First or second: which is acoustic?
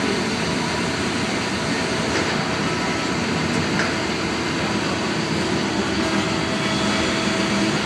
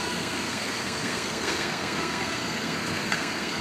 first